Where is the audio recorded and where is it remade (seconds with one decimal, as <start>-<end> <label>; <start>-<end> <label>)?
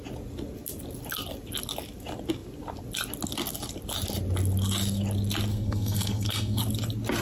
0.0-5.5 recorded; 5.5-6.6 remade; 6.6-7.2 recorded